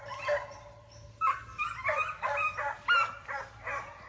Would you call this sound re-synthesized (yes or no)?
no